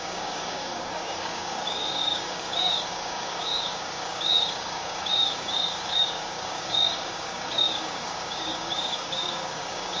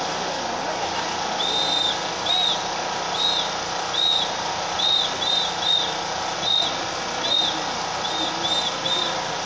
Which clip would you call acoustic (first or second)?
second